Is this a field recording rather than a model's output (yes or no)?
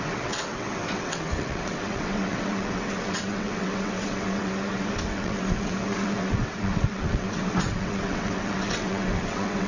no